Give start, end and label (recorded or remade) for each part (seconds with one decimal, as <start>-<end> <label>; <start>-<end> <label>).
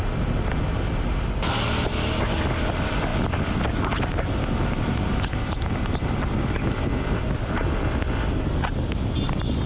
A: 0.0-9.7 recorded